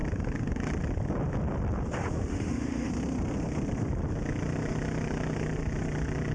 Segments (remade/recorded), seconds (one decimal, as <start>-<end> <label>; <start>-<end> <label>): 0.0-2.3 recorded; 2.3-2.9 remade; 2.9-6.3 recorded